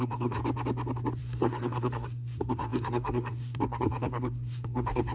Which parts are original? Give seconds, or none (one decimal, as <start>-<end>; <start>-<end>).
0.4-1.2